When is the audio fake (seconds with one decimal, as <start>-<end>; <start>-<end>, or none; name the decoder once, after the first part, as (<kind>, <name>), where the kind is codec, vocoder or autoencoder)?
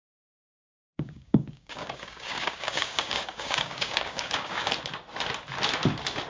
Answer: 0.9-4.7 (codec, DAC)